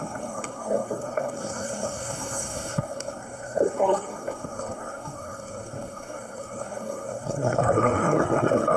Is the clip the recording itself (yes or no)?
no